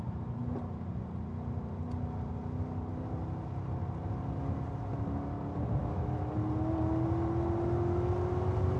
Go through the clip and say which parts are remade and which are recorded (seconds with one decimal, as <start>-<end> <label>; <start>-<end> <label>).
0.0-5.8 recorded; 5.8-6.3 remade; 6.3-8.8 recorded